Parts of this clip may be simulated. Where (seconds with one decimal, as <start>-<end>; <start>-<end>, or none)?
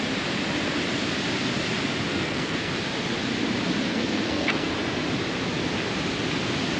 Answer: 2.1-2.7; 3.9-4.7